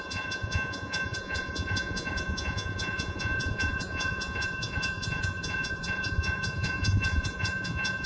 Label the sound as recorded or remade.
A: remade